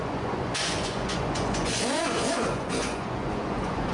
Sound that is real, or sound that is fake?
fake